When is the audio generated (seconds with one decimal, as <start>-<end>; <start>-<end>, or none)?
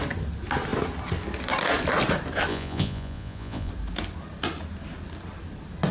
2.5-3.7